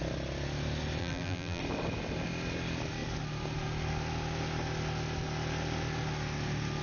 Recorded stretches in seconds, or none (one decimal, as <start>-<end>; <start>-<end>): 0.0-1.0; 1.6-6.8